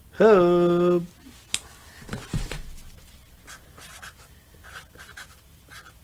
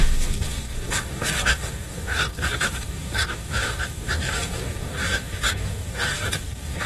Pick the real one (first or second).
first